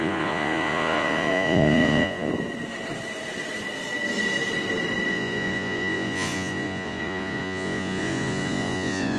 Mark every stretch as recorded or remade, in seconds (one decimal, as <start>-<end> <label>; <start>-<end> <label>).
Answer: 0.0-2.3 remade; 2.3-5.1 recorded; 5.1-9.2 remade